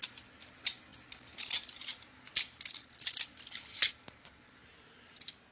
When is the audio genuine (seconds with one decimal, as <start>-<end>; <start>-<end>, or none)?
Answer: 0.0-5.5